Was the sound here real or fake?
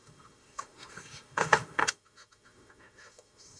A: fake